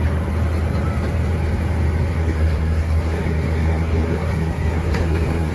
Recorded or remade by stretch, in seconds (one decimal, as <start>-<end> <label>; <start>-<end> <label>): 0.0-2.1 recorded; 2.1-5.5 remade

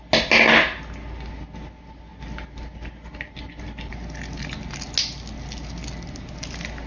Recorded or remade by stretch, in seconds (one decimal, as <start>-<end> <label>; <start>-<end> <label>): 0.0-6.9 recorded

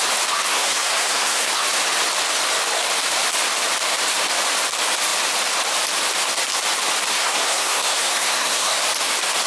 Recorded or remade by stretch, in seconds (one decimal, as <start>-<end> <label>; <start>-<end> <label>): 0.0-0.5 recorded; 0.5-1.5 remade; 1.5-7.1 recorded; 7.1-8.8 remade; 8.8-9.5 recorded

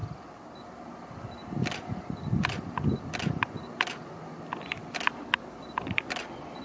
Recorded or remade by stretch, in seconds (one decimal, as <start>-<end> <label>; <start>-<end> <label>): 0.0-6.6 recorded